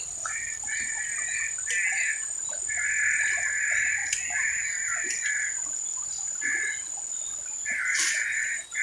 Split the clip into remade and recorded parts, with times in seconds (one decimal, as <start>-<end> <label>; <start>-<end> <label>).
0.0-2.0 recorded; 2.0-2.6 remade; 2.6-8.8 recorded